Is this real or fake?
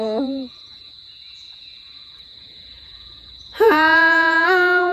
fake